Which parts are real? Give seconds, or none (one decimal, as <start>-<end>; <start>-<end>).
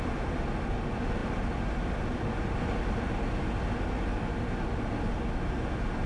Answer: 0.0-6.1